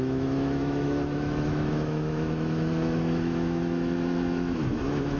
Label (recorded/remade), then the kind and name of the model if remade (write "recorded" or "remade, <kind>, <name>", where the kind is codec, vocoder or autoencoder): remade, autoencoder, DAC-VAE